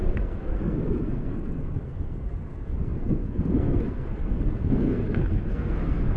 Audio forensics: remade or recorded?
remade